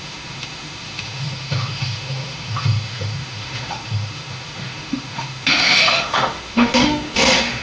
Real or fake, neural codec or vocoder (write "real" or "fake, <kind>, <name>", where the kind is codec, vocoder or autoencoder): fake, autoencoder, DAC-VAE